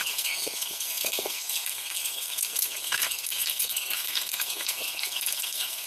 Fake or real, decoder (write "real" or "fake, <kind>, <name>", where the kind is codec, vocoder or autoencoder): fake, codec, SNAC